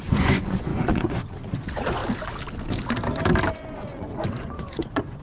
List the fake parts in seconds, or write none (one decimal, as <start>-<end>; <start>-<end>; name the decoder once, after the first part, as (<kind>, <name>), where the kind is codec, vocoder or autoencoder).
0.0-2.0 (vocoder, Vocos); 3.5-5.2